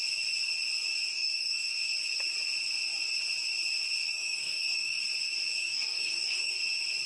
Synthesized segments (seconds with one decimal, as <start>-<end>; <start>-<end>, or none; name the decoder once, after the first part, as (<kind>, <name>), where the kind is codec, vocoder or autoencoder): 1.1-1.9 (codec, DAC); 4.0-5.0; 5.5-6.5